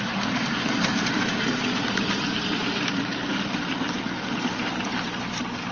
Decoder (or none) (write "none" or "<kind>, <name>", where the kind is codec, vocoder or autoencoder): vocoder, BigVGAN v2